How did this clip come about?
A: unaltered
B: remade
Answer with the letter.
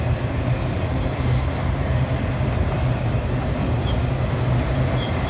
A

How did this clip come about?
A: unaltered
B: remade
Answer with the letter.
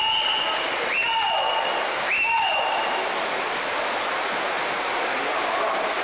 A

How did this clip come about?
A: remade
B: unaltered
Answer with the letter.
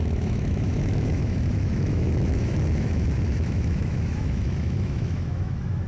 A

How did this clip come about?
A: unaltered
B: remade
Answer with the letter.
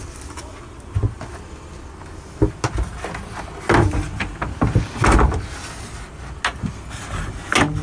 A